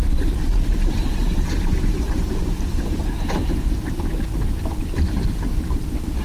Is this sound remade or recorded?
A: remade